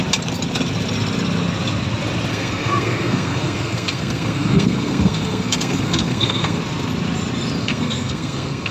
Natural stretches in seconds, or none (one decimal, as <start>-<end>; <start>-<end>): 0.0-2.3; 6.6-7.6